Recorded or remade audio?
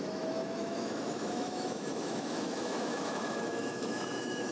remade